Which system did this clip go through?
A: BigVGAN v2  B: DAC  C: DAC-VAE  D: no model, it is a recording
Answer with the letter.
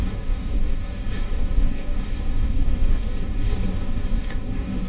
B